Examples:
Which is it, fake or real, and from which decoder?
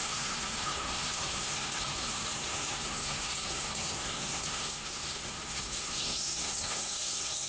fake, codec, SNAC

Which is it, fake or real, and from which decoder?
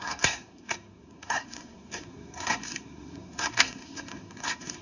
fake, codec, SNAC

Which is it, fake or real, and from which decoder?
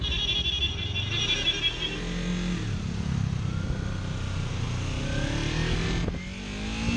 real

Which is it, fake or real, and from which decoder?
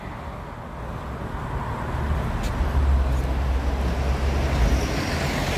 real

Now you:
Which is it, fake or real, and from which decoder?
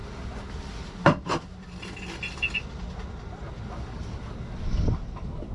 real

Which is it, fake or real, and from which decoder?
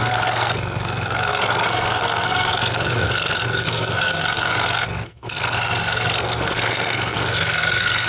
fake, codec, SNAC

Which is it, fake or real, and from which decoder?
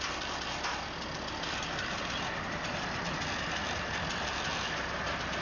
real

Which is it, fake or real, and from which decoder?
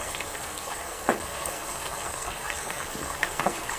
fake, codec, SNAC